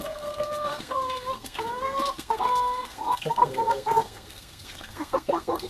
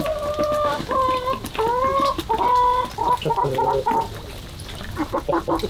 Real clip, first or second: second